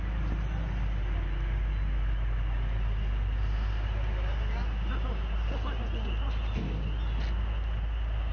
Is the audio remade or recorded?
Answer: recorded